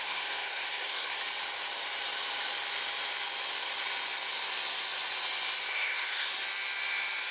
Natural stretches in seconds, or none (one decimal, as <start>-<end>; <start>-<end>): 1.2-5.6; 6.3-7.3